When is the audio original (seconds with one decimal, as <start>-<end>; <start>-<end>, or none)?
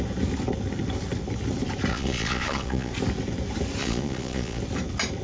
0.0-1.9; 2.9-3.8; 4.6-5.2